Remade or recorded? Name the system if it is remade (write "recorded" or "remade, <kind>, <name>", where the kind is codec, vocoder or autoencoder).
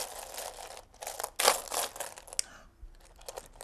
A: recorded